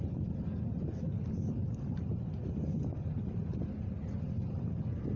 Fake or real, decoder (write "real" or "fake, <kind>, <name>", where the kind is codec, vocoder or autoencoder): real